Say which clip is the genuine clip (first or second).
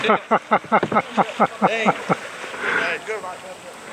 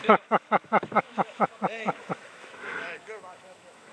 first